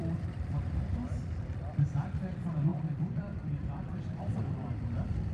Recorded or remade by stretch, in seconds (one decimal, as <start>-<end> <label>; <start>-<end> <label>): 0.0-5.3 remade